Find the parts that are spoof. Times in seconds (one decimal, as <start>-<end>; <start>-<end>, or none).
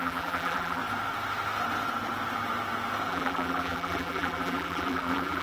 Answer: 0.0-0.8; 3.1-5.4